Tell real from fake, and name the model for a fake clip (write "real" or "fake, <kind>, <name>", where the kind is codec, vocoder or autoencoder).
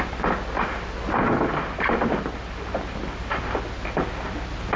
real